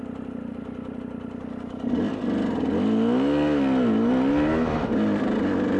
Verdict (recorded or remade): recorded